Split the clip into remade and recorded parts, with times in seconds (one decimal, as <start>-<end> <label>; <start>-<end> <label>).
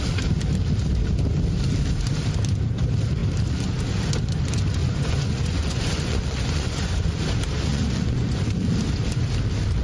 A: 0.0-4.8 recorded; 4.8-7.2 remade; 7.2-7.7 recorded; 7.7-8.4 remade; 8.4-9.8 recorded